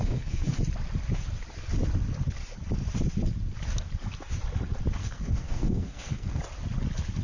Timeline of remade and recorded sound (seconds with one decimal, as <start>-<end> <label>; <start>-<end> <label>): 0.0-0.6 remade; 0.6-5.0 recorded; 5.0-6.4 remade; 6.4-7.2 recorded